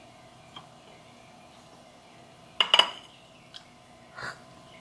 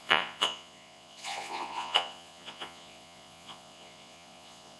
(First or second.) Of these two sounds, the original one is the first